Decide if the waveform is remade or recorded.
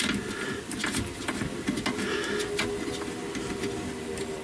recorded